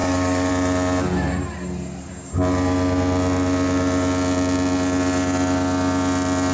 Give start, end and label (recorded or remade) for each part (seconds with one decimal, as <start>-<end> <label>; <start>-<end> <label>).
0.0-0.5 remade; 0.5-6.5 recorded